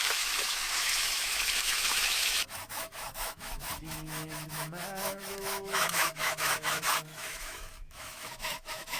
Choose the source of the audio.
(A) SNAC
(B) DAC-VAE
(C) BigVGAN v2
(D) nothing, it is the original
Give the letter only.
B